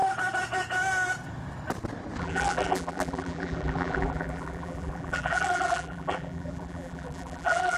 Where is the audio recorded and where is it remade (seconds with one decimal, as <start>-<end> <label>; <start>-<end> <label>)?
0.0-2.2 recorded; 2.2-7.8 remade